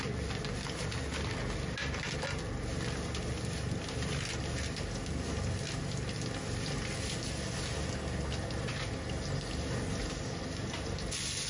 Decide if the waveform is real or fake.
real